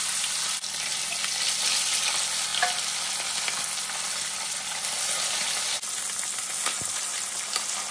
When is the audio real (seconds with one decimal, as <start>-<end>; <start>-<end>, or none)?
0.0-7.9